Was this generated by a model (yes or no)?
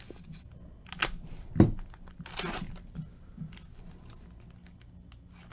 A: no